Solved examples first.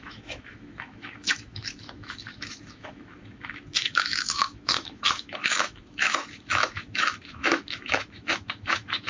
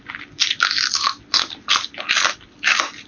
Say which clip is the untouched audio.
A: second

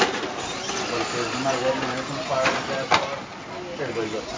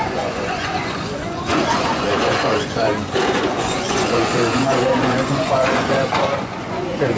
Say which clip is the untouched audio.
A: first